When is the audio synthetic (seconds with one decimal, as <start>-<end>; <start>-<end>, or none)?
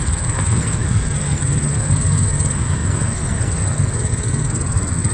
0.0-5.1